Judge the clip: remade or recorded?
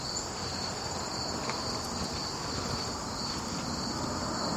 recorded